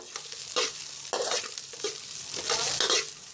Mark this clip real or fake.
real